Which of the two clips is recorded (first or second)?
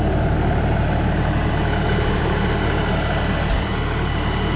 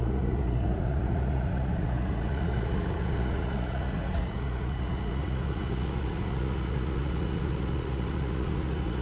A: first